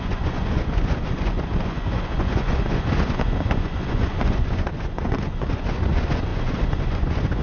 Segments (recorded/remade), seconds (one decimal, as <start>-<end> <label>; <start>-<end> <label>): 0.0-7.4 remade